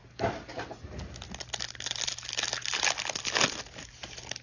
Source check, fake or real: real